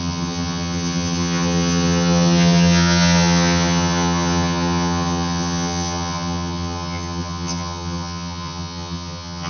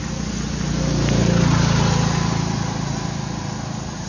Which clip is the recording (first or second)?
second